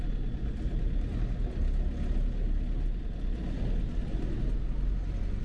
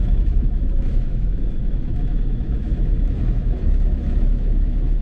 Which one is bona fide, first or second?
first